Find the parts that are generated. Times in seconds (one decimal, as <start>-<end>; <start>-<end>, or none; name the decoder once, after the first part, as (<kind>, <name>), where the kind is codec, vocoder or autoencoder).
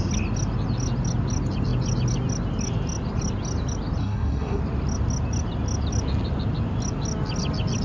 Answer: 4.0-4.6 (codec, SNAC)